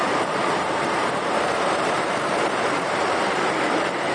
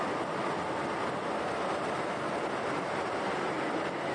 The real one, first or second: second